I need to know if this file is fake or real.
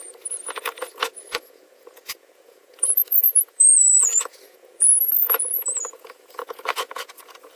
fake